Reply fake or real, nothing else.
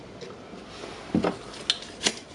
real